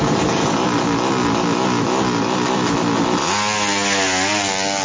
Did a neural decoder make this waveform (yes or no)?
no